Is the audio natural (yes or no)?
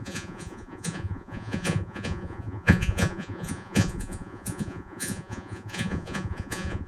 no